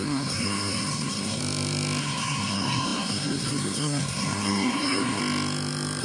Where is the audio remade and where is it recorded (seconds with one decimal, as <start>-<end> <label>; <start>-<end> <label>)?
0.0-1.4 remade; 1.4-2.0 recorded; 2.0-5.2 remade; 5.2-6.0 recorded